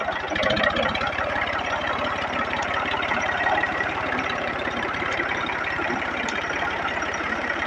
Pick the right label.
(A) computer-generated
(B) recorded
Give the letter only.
A